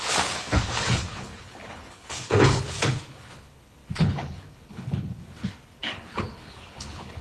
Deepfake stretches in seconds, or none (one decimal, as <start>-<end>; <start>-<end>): 0.0-7.2